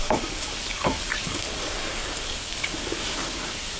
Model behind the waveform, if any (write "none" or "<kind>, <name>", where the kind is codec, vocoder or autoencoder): codec, DAC